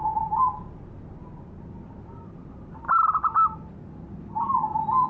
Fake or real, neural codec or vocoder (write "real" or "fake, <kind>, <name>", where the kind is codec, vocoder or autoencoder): real